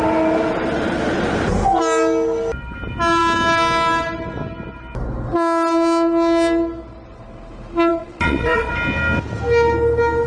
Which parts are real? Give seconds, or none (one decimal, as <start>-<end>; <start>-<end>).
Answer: 0.0-7.9; 8.7-10.3